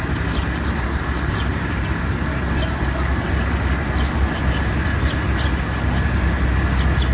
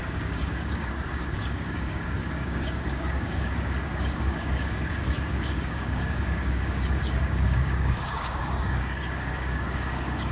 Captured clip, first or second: first